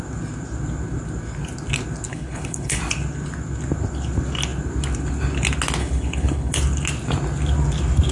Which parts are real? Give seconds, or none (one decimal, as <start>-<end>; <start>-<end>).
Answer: 0.0-2.1; 2.8-5.8; 6.6-8.1